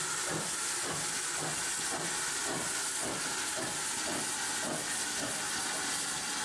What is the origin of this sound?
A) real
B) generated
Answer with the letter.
A